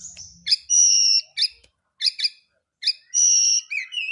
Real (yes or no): yes